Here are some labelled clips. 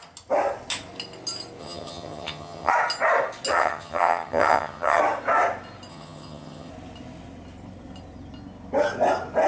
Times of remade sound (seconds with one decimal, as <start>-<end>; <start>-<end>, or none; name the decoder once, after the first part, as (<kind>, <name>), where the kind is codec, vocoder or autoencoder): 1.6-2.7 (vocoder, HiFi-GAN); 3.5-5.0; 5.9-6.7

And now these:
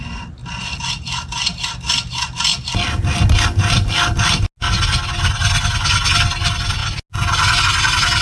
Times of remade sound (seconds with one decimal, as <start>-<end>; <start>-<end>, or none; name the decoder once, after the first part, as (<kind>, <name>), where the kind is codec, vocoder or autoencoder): none

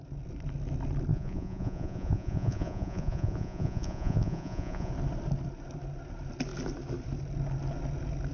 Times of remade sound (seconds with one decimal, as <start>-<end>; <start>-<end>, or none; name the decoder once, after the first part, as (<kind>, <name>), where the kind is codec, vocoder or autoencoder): 1.1-4.9 (vocoder, Vocos)